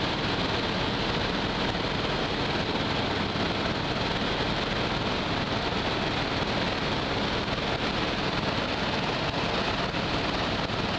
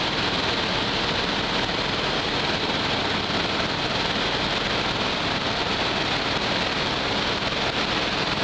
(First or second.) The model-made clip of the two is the second